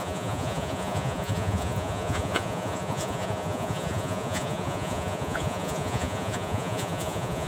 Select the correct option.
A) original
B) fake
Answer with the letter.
B